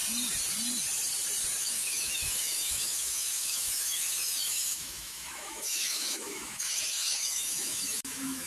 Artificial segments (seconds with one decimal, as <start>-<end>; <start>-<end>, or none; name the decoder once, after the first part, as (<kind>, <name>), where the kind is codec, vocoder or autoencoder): 1.6-8.5 (autoencoder, DAC-VAE)